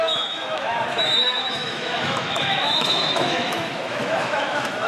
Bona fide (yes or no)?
no